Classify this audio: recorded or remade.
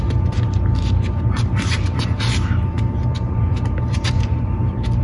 remade